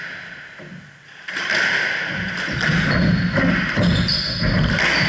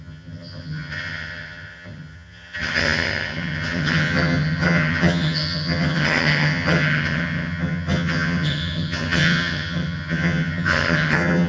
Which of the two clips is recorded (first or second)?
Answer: first